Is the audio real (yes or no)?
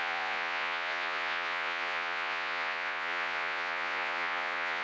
no